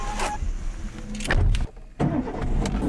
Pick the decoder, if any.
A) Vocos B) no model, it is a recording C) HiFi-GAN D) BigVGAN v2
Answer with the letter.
B